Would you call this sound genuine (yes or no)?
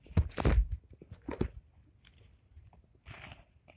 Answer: yes